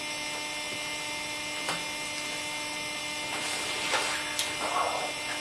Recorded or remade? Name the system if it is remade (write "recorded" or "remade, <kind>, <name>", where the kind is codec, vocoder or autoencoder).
remade, vocoder, BigVGAN v2